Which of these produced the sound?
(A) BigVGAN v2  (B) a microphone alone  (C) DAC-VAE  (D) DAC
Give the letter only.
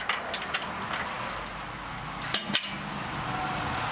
B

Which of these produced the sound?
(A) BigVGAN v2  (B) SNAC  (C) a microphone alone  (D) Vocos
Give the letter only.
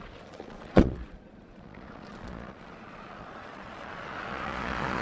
D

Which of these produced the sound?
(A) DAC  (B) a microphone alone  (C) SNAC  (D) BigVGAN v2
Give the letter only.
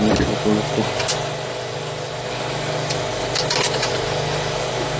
B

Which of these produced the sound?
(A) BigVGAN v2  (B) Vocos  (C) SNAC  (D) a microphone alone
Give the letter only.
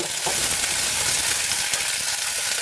D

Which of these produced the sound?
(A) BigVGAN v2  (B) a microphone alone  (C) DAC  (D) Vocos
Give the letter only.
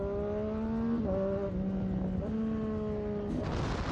B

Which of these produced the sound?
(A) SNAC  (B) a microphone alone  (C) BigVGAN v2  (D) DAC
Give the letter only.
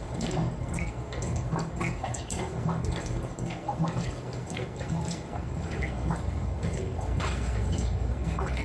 A